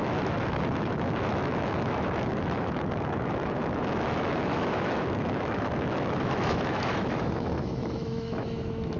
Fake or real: fake